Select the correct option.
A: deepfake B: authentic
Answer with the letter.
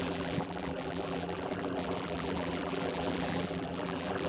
A